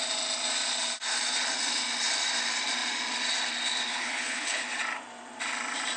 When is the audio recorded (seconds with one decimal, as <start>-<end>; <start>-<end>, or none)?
0.0-3.9; 4.6-6.0